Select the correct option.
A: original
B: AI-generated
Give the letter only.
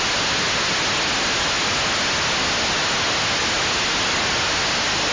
A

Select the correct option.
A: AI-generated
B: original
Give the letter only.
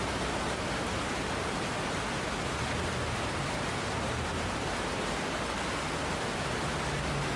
B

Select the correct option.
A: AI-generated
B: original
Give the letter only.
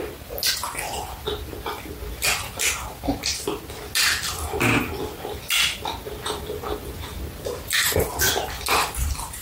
B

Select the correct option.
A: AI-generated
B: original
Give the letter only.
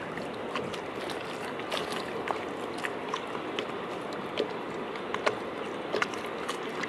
B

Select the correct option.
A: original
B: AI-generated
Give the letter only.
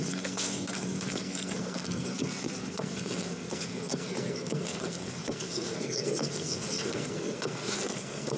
B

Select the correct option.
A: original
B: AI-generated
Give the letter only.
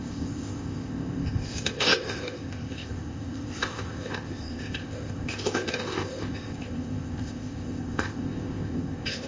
B